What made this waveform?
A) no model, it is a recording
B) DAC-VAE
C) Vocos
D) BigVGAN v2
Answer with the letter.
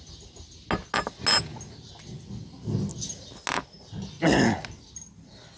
A